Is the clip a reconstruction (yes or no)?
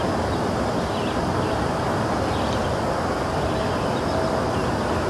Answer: no